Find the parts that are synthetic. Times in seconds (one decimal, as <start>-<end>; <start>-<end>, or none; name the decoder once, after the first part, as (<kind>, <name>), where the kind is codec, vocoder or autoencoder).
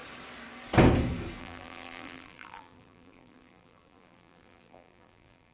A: 1.4-5.5 (vocoder, BigVGAN v2)